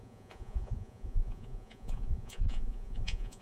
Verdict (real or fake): fake